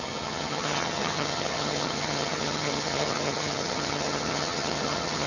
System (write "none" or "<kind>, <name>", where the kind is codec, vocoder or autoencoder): vocoder, HiFi-GAN